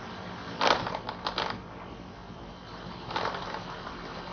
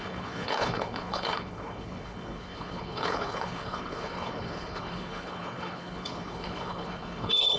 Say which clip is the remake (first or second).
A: second